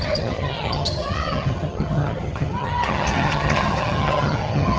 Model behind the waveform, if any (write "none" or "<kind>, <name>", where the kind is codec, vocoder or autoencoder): vocoder, HiFi-GAN